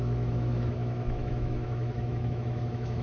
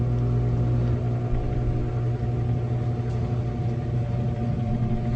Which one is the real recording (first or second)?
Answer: second